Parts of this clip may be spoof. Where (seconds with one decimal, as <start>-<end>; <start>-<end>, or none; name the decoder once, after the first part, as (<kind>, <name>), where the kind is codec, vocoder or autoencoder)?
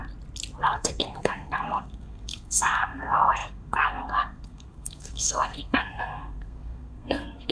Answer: 0.6-7.5 (codec, SNAC)